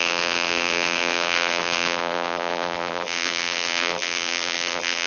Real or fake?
fake